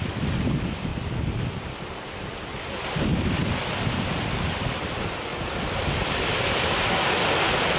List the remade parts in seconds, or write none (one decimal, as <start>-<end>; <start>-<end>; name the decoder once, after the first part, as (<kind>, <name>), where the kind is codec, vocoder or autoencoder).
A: none